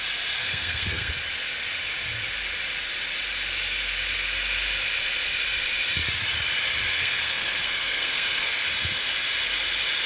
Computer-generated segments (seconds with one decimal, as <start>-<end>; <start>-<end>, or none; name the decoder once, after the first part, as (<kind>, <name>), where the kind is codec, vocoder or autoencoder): 0.4-1.1 (codec, SNAC); 7.0-8.5